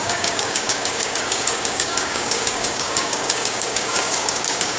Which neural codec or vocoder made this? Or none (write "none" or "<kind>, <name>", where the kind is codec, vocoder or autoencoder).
codec, DAC